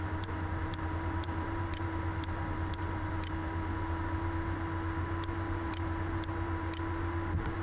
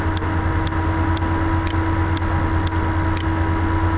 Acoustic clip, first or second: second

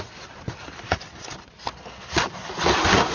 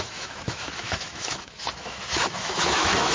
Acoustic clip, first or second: first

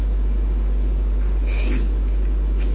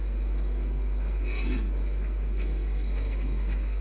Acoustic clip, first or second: first